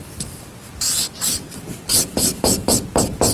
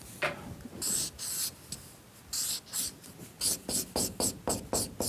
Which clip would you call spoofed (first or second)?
first